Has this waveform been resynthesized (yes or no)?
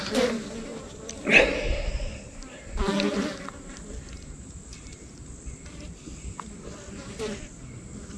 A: no